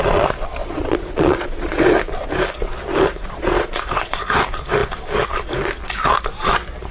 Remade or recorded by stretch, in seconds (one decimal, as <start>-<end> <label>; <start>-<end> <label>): 0.0-0.6 recorded; 0.6-1.8 remade; 1.8-3.2 recorded; 3.2-4.2 remade; 4.2-6.9 recorded